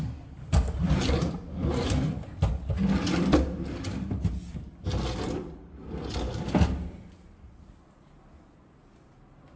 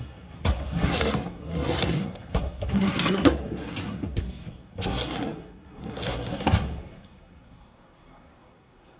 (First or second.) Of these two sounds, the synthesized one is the second